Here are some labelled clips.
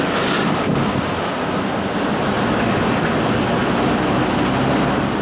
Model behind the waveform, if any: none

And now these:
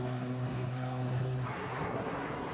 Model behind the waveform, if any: codec, SNAC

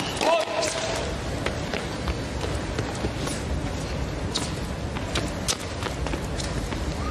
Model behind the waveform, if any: none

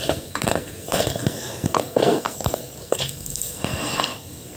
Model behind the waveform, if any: codec, SNAC